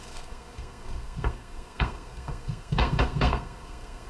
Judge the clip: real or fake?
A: fake